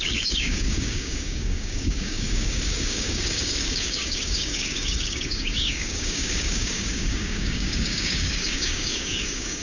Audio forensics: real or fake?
fake